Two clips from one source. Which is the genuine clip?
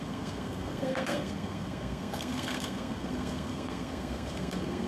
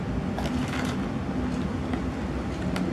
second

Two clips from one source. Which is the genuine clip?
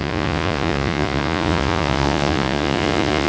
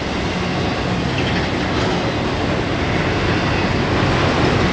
second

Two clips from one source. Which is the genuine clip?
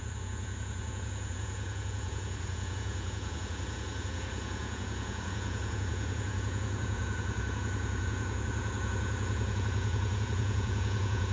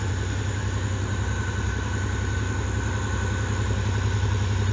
second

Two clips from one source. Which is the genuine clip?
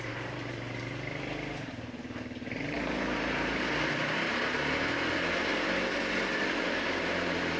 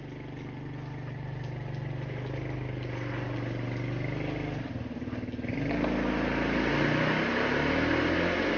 second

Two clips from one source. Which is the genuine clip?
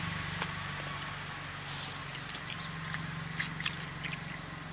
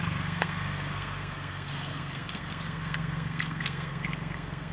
first